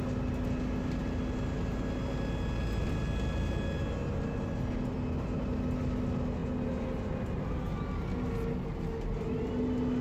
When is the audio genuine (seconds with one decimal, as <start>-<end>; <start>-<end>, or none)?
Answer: 0.0-10.0

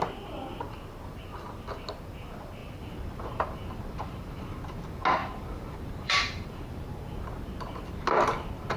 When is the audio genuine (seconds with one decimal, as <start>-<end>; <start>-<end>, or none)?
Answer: 0.0-2.6; 4.4-5.2; 7.2-8.8

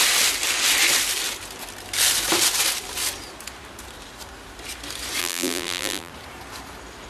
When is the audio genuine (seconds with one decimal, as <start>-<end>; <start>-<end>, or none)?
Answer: 0.0-5.2; 6.1-7.1

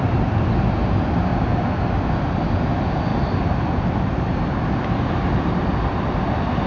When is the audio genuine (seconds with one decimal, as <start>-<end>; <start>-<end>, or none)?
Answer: 0.0-3.1; 5.4-6.7

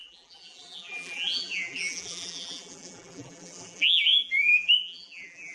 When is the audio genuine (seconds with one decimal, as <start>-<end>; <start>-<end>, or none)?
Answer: none

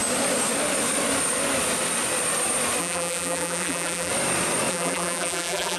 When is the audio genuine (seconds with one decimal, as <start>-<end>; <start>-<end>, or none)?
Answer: 0.0-2.8; 4.1-4.7

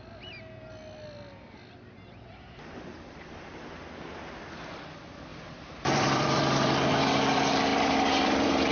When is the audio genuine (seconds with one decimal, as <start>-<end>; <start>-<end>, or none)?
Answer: 0.0-5.3; 7.0-7.7